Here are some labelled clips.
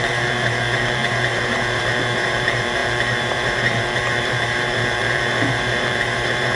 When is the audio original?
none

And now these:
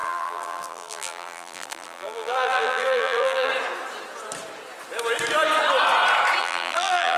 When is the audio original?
3.5-6.4

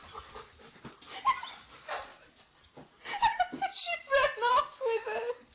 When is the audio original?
0.0-2.1; 4.5-5.5

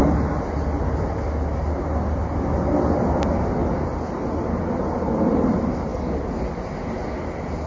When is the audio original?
0.0-7.7

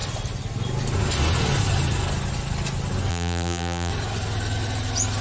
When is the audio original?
0.0-3.1; 3.9-5.2

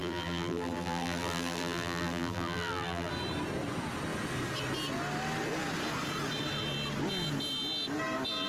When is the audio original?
3.1-8.5

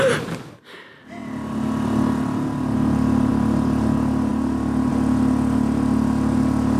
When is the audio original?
0.0-6.8

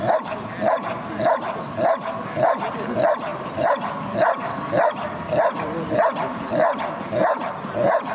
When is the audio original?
0.0-3.3; 7.0-8.1